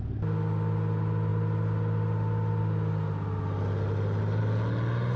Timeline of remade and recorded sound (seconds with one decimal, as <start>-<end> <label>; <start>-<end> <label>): 0.0-5.2 recorded